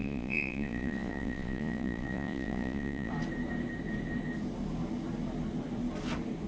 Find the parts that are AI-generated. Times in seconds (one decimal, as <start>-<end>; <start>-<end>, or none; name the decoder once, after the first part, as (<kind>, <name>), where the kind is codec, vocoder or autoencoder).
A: 0.0-3.1 (vocoder, Vocos)